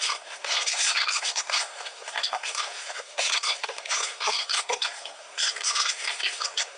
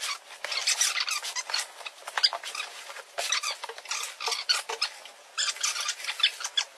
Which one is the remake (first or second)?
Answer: first